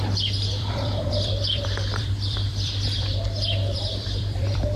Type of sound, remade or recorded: remade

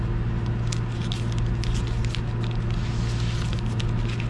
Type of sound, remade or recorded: recorded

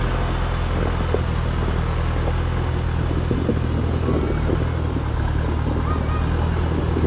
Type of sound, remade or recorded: recorded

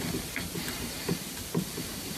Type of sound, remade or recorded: remade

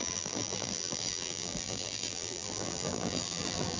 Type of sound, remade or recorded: remade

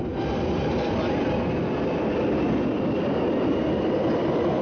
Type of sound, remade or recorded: recorded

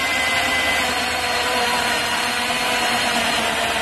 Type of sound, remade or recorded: recorded